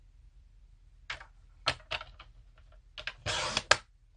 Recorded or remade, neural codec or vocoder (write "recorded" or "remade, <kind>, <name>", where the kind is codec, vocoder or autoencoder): recorded